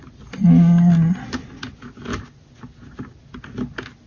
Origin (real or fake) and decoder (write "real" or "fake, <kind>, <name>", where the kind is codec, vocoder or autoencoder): real